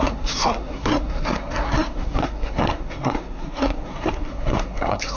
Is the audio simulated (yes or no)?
yes